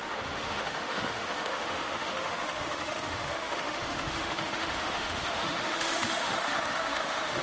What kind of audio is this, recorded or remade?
remade